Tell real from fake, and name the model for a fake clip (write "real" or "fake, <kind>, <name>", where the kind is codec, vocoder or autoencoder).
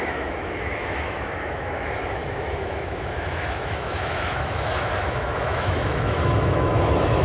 fake, autoencoder, DAC-VAE